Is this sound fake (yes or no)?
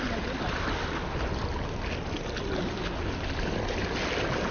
no